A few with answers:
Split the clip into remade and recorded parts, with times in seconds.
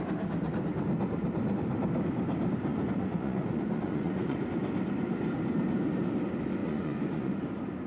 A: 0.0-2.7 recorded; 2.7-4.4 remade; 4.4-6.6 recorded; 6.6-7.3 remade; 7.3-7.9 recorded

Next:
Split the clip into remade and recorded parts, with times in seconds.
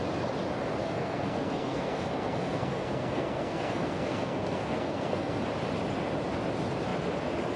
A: 0.0-0.8 recorded; 0.8-5.4 remade; 5.4-7.6 recorded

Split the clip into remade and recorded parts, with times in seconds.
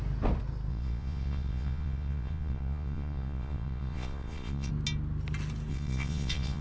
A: 0.0-0.7 recorded; 0.7-4.7 remade; 4.7-5.7 recorded; 5.7-6.6 remade